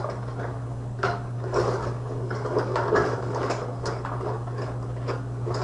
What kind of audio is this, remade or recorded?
remade